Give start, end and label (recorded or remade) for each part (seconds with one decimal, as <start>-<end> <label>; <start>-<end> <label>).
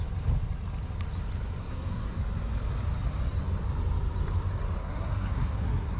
0.0-1.6 recorded; 1.6-2.2 remade; 2.2-4.8 recorded; 4.8-6.0 remade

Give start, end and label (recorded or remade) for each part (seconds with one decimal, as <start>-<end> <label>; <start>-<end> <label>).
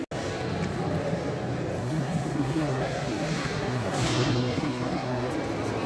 0.0-1.8 recorded; 1.8-5.3 remade; 5.3-5.9 recorded